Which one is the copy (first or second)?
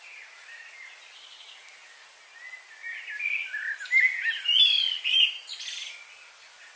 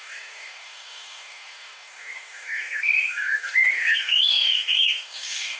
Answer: second